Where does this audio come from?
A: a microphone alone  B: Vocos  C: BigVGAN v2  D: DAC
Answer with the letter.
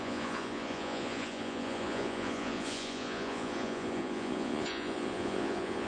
B